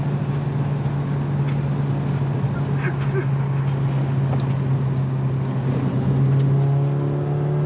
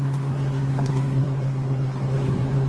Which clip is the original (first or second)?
first